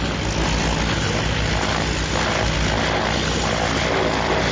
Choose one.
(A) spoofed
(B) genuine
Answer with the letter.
B